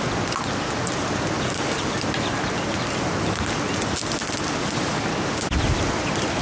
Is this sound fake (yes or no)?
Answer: no